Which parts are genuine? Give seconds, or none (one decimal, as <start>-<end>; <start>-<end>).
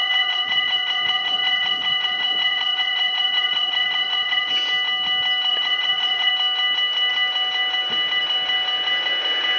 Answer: 4.5-5.5; 6.3-9.6